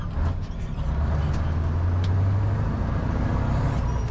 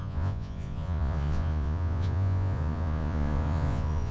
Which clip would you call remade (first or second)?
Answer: second